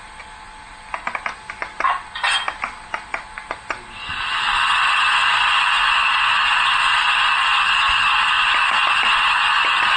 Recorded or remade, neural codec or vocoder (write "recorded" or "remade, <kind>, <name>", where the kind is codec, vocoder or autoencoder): recorded